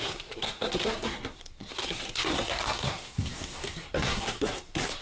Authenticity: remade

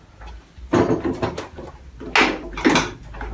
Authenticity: recorded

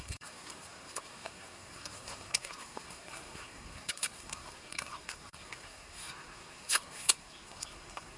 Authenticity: remade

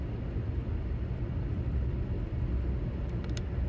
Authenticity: recorded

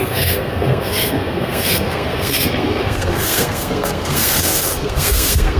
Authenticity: remade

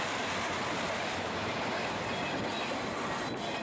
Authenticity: recorded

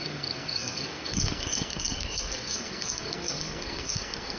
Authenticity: remade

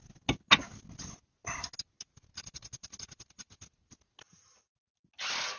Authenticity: recorded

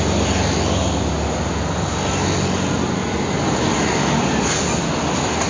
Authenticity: recorded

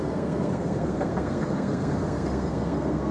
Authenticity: remade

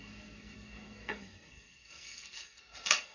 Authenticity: remade